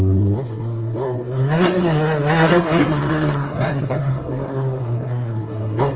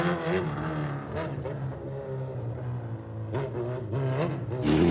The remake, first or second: first